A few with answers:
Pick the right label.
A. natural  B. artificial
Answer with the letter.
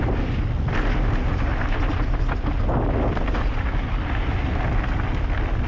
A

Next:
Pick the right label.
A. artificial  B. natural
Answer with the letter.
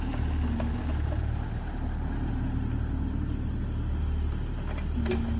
B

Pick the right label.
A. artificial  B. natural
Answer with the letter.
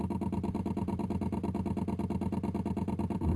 B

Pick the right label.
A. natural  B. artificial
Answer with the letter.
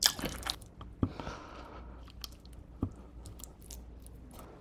A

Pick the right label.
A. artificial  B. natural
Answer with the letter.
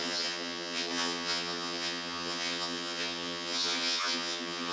A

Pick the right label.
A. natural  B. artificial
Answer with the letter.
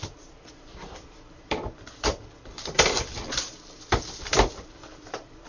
B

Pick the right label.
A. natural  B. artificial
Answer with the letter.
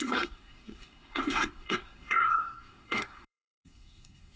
B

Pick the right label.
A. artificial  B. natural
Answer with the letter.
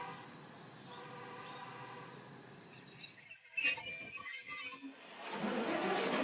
B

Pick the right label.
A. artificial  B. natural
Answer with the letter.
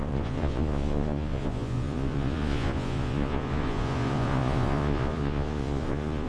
A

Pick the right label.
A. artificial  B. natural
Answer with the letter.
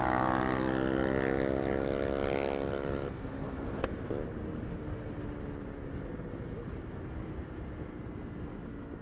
B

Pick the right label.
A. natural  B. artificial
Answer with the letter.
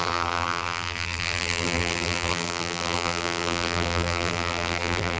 B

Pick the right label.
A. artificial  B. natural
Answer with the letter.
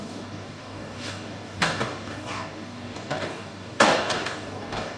A